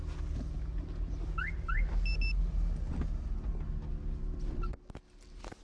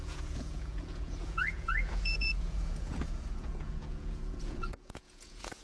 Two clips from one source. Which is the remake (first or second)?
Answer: second